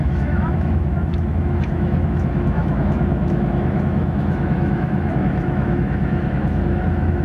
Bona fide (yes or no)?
no